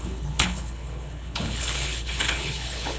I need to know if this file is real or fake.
fake